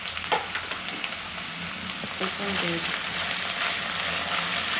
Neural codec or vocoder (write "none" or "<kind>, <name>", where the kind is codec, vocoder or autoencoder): none